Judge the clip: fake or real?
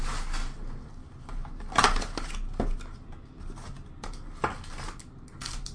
real